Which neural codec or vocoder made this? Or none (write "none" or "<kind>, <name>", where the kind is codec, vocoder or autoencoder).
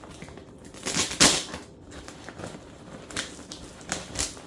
none